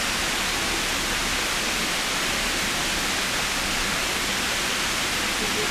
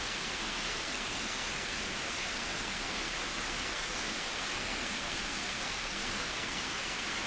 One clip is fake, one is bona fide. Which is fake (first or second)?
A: second